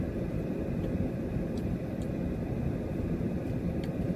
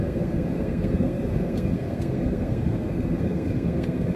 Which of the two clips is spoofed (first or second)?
second